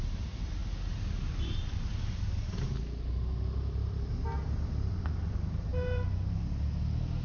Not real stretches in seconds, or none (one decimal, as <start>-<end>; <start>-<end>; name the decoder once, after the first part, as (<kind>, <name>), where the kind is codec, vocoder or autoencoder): none